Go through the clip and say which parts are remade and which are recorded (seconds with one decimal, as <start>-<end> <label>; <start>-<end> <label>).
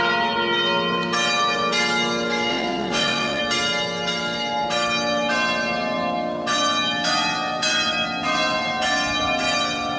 0.0-2.5 recorded; 2.5-3.4 remade; 3.4-10.0 recorded